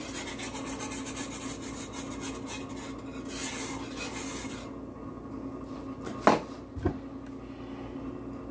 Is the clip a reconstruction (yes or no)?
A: no